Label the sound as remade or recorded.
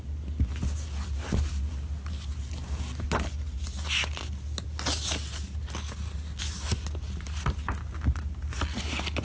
recorded